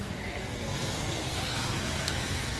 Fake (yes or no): yes